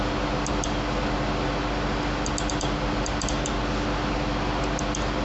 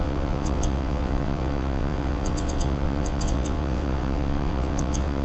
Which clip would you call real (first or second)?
first